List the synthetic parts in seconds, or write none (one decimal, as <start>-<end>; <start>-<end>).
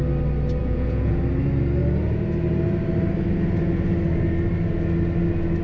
0.6-1.2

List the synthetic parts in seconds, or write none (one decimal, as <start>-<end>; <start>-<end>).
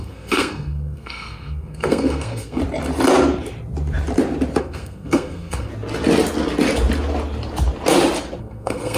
0.0-2.6; 4.6-5.7; 8.4-9.0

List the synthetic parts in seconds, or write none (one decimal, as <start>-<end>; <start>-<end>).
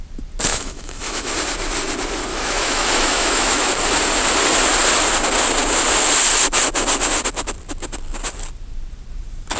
0.5-1.3; 2.3-3.7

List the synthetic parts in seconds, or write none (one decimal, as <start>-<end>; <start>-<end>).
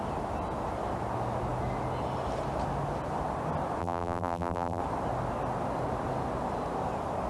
3.8-4.8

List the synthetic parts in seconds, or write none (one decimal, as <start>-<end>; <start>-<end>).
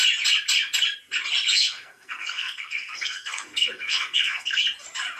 1.5-4.6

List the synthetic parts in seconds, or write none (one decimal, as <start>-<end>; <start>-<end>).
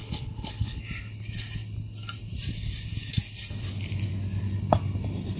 0.0-0.8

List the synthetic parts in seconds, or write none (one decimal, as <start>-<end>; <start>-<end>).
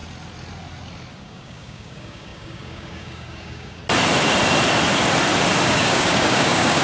1.2-3.8; 5.7-6.8